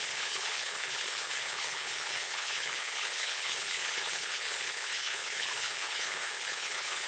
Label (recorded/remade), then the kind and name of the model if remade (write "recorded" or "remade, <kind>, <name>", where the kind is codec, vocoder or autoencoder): remade, codec, HILCodec